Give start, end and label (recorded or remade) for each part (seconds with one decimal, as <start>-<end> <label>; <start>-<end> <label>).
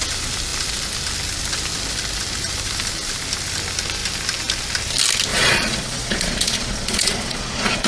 0.0-5.3 recorded; 5.3-7.9 remade